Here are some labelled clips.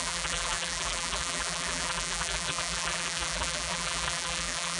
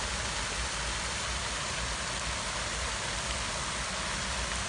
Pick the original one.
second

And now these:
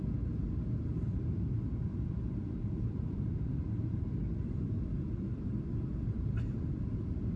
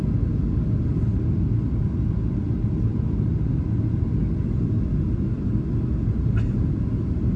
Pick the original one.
second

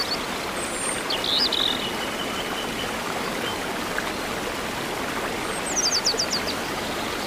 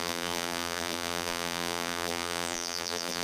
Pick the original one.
first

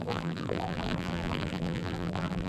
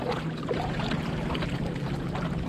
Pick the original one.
second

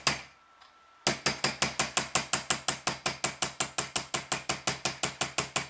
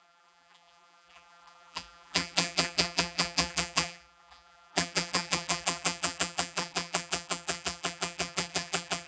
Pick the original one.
first